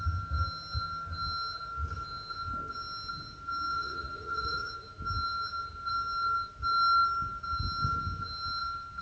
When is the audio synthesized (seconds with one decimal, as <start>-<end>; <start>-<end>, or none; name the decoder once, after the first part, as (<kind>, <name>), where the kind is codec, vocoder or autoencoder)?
3.7-4.7 (vocoder, Vocos)